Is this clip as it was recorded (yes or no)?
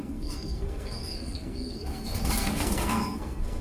no